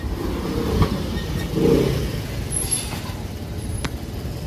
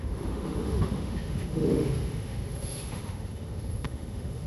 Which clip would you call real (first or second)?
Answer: first